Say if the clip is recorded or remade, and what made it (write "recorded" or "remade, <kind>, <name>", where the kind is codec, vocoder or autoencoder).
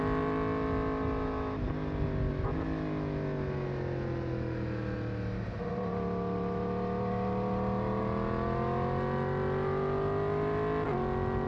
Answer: recorded